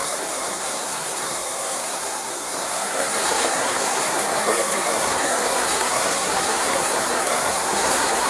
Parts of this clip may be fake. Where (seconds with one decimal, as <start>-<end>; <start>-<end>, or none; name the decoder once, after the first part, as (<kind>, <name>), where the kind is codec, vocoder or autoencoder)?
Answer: 0.0-8.3 (codec, SNAC)